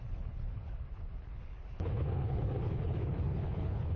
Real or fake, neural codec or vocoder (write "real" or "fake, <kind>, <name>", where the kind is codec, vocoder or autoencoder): fake, codec, HILCodec